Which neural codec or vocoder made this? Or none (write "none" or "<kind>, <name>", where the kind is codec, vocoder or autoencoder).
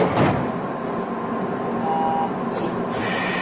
none